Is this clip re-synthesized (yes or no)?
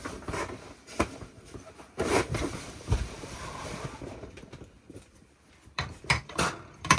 yes